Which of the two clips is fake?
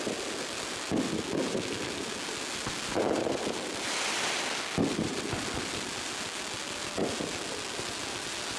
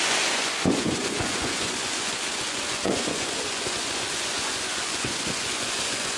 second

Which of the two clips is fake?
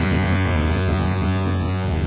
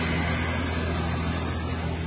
first